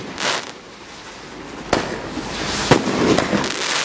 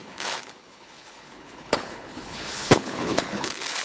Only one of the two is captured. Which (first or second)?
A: first